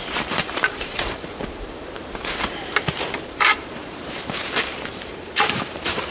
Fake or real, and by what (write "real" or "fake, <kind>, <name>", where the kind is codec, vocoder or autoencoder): fake, vocoder, BigVGAN v2